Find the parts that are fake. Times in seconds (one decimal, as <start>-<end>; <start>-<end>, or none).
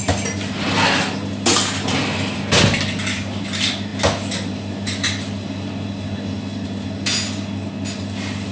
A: none